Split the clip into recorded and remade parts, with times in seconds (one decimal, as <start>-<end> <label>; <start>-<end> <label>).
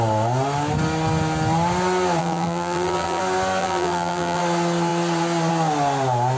0.0-2.2 recorded; 2.2-3.2 remade; 3.2-3.6 recorded; 3.6-4.4 remade; 4.4-6.4 recorded